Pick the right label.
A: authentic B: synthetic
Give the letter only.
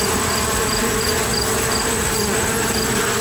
A